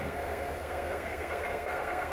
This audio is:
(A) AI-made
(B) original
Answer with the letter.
A